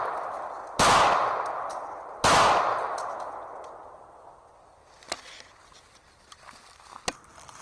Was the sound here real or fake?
real